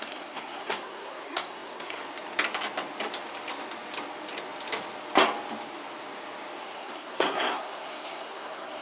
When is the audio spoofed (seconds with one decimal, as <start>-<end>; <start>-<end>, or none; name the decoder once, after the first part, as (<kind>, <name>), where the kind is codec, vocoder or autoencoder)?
0.0-2.0 (codec, SNAC); 6.6-8.8